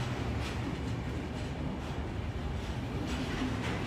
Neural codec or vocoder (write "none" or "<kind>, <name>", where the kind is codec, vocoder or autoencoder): none